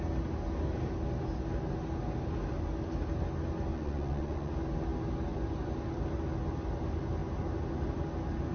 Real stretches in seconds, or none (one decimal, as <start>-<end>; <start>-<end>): 0.0-3.7; 4.5-8.5